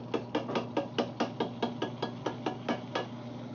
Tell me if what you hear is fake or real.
real